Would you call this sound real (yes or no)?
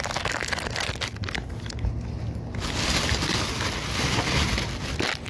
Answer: yes